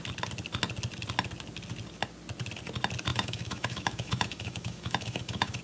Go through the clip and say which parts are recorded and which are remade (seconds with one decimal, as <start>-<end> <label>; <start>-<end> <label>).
0.0-3.1 recorded; 3.1-5.6 remade